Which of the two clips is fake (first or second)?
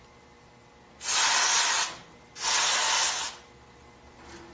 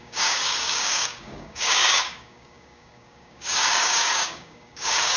second